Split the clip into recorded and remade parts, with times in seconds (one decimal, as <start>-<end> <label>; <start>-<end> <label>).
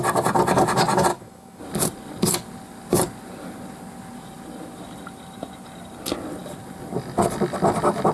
0.0-1.1 recorded; 1.1-1.6 remade; 1.6-8.1 recorded